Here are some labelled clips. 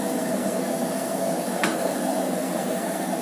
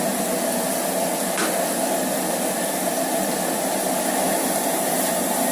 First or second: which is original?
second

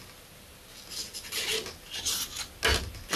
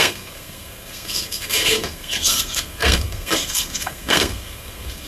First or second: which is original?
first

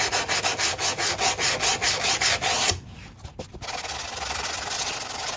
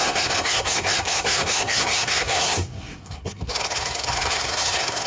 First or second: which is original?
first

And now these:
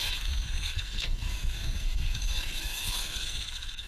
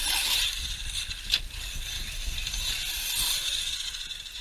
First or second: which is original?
second